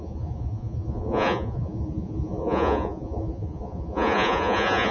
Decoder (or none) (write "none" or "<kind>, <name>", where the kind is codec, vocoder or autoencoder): vocoder, Vocos